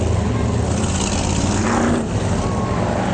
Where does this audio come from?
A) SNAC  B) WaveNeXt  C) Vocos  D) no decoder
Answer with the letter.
D